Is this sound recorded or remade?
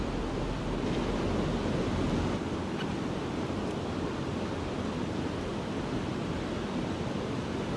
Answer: recorded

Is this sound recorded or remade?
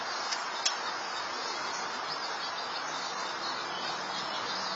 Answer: recorded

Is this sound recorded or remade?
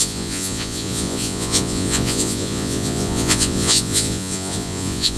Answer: remade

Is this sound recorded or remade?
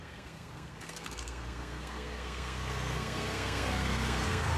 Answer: remade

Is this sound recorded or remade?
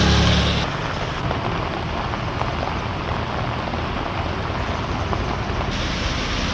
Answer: recorded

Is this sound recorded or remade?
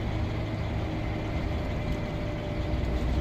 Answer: recorded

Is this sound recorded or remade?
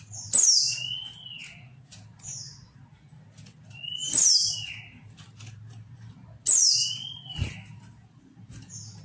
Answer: recorded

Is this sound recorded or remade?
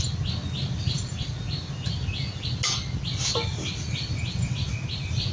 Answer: recorded